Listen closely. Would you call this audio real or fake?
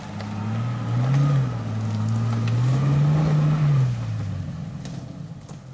real